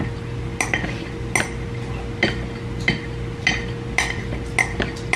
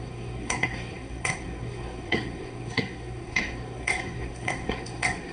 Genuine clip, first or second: first